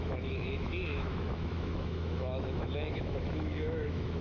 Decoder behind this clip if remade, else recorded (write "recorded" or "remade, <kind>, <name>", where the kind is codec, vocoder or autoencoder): remade, autoencoder, DAC-VAE